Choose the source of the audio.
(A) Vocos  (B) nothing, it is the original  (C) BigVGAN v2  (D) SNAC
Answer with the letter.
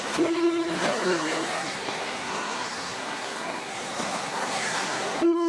D